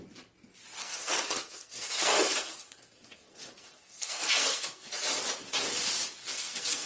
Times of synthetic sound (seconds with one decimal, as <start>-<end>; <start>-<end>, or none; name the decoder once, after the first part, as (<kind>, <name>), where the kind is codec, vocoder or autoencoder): 0.8-4.9 (codec, SNAC); 6.2-6.9